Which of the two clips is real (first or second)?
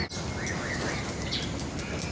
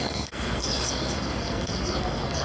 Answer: first